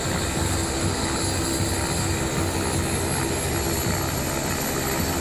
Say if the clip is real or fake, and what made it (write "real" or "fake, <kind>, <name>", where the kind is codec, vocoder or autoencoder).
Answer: real